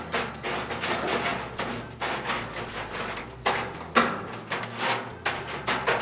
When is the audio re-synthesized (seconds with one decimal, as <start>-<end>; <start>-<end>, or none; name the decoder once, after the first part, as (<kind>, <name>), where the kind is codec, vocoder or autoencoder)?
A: none